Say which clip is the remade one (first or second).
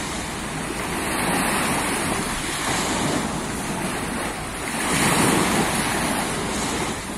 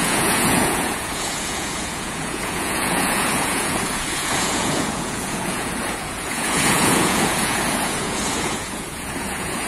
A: second